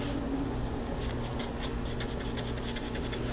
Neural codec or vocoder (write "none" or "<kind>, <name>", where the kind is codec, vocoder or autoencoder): none